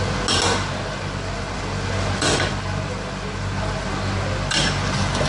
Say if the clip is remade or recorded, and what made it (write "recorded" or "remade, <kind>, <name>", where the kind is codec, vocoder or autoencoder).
recorded